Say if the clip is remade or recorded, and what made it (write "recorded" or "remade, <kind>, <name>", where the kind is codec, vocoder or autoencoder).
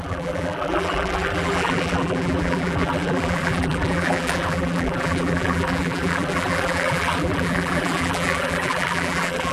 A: remade, vocoder, BigVGAN v2